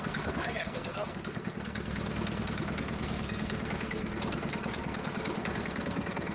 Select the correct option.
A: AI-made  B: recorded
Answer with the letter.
A